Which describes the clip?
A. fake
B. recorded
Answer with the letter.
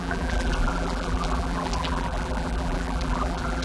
A